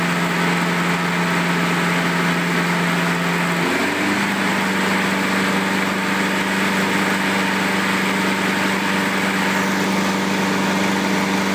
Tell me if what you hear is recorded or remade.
recorded